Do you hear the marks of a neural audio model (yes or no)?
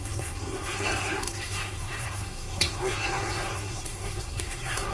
yes